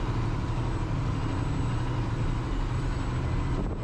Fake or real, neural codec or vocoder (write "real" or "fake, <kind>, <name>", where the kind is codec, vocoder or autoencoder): real